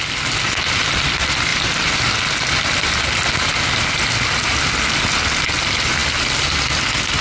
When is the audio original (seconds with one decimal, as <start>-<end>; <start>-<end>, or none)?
0.0-7.2